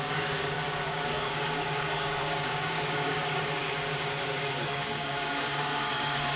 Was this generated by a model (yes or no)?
yes